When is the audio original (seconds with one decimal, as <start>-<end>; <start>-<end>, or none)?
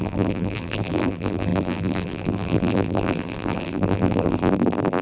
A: none